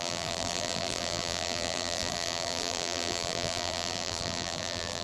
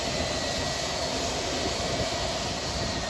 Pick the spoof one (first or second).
first